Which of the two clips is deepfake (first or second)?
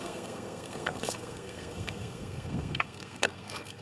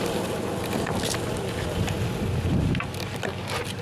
first